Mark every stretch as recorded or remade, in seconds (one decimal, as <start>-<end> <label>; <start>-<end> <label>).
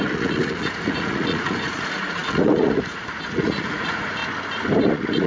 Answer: 0.0-4.2 remade; 4.2-4.8 recorded; 4.8-5.3 remade